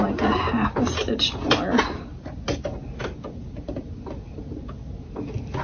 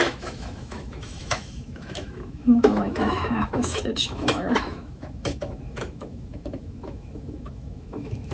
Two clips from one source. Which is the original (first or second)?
first